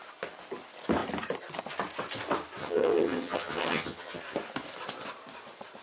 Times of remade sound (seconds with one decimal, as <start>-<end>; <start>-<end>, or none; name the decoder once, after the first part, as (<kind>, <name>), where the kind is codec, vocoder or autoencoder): 2.6-4.2 (vocoder, HiFi-GAN)